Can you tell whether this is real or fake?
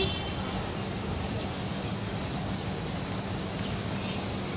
real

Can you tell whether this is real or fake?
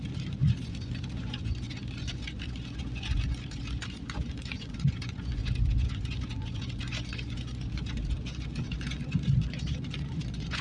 fake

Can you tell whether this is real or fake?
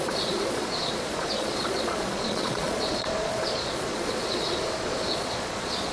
fake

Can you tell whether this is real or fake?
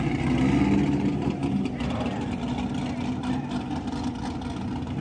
real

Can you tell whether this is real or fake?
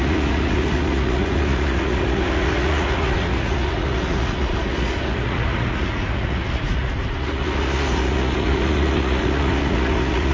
fake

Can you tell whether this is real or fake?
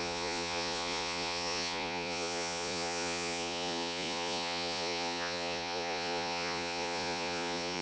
fake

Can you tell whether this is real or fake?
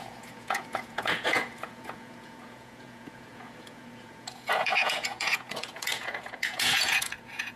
fake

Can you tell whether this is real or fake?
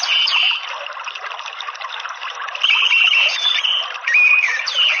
real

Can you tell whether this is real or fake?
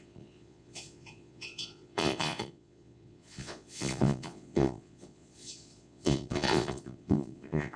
fake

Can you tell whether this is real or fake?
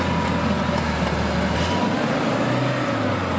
real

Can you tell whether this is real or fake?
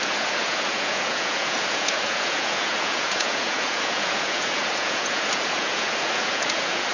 fake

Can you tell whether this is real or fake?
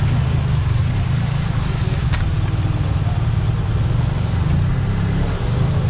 real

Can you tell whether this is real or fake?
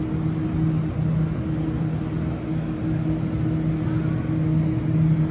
real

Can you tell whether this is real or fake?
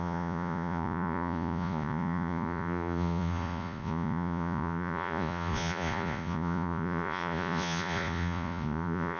fake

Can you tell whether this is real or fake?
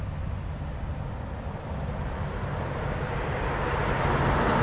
real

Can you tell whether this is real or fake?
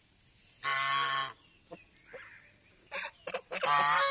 real